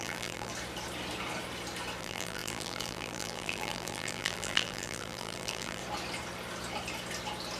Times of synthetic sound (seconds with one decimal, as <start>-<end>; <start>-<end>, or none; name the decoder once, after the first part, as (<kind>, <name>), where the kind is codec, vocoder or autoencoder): 0.0-0.5 (vocoder, BigVGAN v2); 2.0-5.8

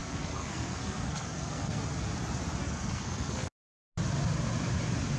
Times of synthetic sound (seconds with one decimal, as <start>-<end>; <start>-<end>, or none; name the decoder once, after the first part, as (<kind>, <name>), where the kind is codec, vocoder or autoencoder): 0.0-1.8 (codec, SNAC); 2.6-3.6

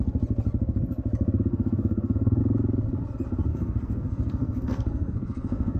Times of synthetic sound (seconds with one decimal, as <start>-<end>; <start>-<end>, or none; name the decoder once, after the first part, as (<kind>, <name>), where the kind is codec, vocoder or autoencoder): 1.5-2.4 (codec, SNAC); 3.5-5.8

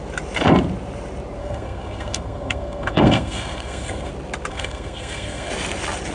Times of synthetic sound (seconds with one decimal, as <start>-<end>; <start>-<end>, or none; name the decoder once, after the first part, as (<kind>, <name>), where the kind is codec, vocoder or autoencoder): 1.4-4.1 (codec, SNAC); 4.5-5.5

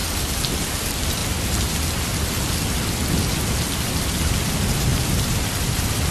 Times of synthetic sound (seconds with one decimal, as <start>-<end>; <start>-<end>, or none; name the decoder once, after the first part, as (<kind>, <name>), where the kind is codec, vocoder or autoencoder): 0.7-1.2 (vocoder, BigVGAN v2); 4.3-6.1